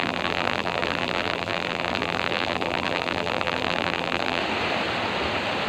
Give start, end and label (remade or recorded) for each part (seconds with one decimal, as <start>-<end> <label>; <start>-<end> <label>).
0.0-4.4 remade; 4.4-5.7 recorded